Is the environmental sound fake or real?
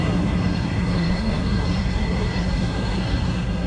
fake